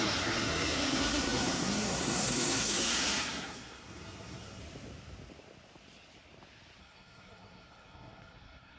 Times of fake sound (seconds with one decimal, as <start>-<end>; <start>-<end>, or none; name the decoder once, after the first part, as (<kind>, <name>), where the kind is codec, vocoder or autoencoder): 0.0-4.6 (codec, SNAC); 6.8-8.8